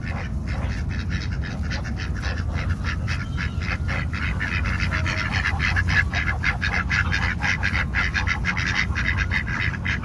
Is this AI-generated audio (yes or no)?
no